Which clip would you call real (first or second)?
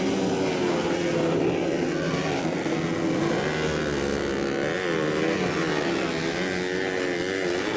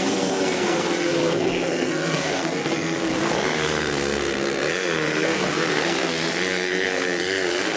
first